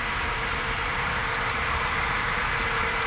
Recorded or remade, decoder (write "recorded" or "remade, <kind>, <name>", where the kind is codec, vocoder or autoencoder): recorded